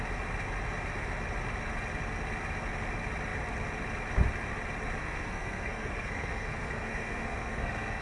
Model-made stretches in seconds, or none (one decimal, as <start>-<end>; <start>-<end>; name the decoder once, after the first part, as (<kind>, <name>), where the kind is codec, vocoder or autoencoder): 5.0-8.0 (codec, SNAC)